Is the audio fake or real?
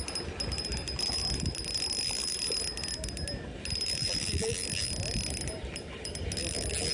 real